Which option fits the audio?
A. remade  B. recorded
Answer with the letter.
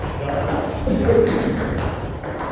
B